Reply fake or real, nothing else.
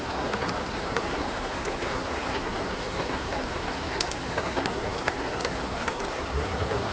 fake